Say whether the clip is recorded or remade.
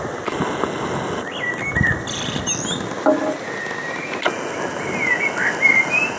recorded